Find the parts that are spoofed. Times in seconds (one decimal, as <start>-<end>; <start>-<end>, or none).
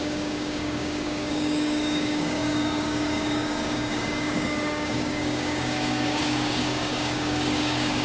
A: 0.0-8.0